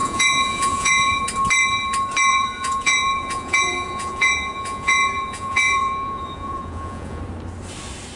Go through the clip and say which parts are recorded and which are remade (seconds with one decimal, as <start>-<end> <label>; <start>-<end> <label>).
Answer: 0.0-1.2 remade; 1.2-2.3 recorded; 2.3-7.2 remade; 7.2-8.2 recorded